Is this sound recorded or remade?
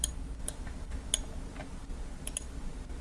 recorded